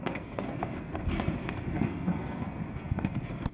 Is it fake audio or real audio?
fake